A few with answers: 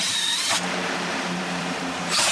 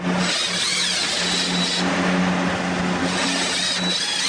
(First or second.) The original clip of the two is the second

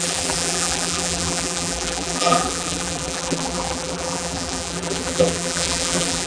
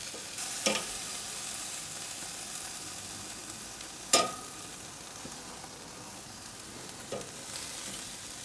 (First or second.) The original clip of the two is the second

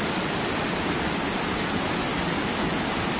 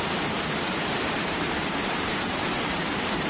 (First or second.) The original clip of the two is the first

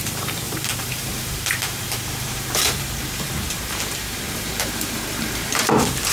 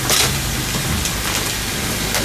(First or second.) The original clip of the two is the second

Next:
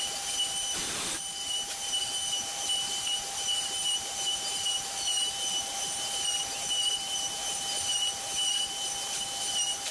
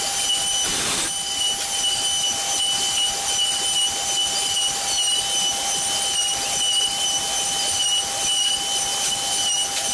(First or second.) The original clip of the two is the second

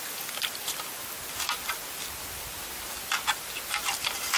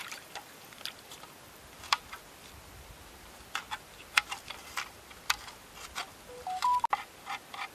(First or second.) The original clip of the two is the first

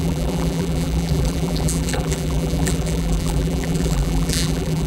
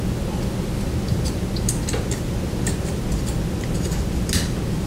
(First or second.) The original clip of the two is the second